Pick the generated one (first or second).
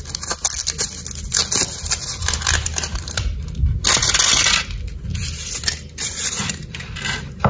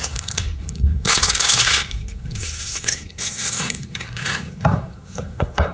second